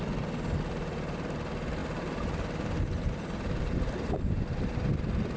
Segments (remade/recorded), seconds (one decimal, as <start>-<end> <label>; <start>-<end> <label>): 0.0-1.8 recorded; 1.8-4.9 remade; 4.9-5.4 recorded

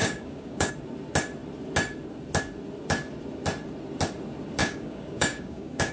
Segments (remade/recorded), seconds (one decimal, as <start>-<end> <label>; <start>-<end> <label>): 0.0-0.7 remade; 0.7-4.6 recorded; 4.6-5.9 remade

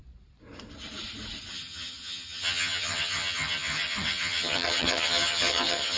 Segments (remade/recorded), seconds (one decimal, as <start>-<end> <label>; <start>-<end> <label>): 0.0-1.5 recorded; 1.5-6.0 remade

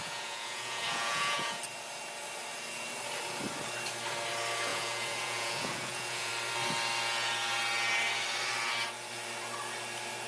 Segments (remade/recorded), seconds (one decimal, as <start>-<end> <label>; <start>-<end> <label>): 0.0-1.6 remade; 1.6-4.7 recorded; 4.7-6.3 remade; 6.3-10.3 recorded

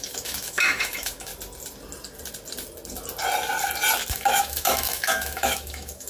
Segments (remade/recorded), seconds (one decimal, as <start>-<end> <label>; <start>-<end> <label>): 0.0-1.3 remade; 1.3-4.1 recorded; 4.1-6.1 remade

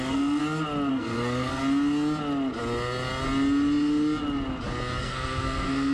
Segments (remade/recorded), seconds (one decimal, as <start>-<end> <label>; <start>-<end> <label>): 0.0-0.4 remade; 0.4-0.9 recorded; 0.9-1.6 remade; 1.6-5.0 recorded; 5.0-5.9 remade